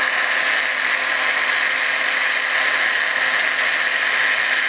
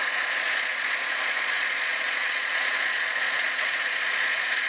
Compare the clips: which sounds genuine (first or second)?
first